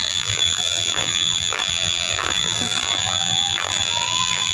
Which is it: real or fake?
fake